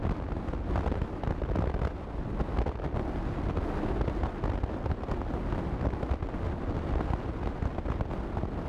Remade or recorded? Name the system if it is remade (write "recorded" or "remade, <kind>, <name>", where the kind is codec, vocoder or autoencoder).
recorded